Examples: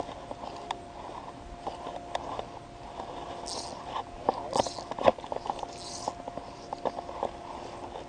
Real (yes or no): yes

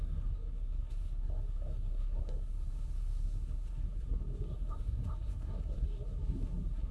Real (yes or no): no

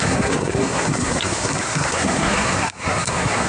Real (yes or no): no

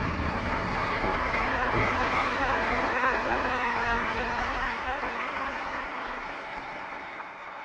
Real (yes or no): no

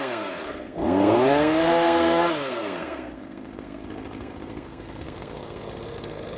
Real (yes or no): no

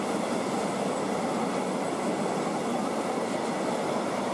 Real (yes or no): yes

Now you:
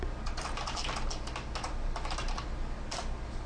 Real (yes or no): yes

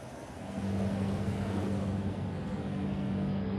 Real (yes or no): no